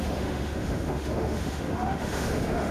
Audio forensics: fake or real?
fake